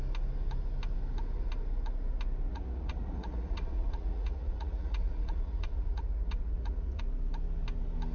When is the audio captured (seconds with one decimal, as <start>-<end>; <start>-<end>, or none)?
0.0-2.5; 7.0-8.1